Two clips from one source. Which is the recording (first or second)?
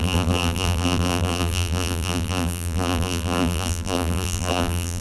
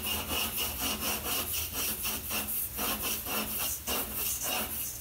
second